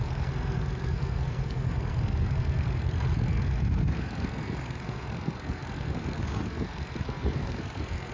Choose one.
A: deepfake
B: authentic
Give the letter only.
A